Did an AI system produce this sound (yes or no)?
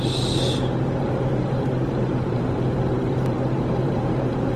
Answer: yes